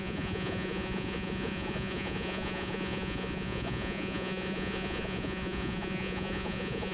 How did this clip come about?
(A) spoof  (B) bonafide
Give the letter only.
A